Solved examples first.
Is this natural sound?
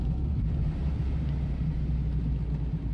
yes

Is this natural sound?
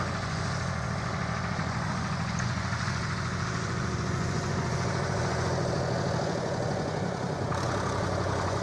no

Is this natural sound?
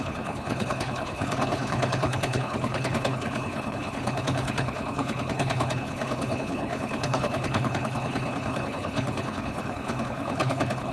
no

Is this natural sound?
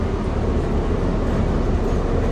yes